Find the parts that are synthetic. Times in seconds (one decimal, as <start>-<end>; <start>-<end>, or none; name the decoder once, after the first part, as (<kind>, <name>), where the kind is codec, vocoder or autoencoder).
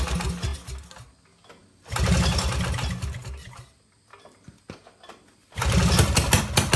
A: 4.1-6.3 (vocoder, BigVGAN v2)